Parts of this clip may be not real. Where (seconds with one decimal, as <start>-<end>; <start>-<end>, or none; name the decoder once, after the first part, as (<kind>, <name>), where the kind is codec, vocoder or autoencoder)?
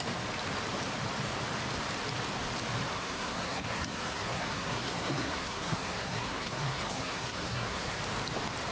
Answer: 2.9-8.0 (codec, SNAC)